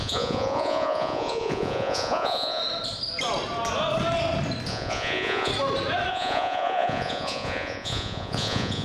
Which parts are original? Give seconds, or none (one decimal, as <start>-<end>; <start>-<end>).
2.6-4.7; 5.5-6.1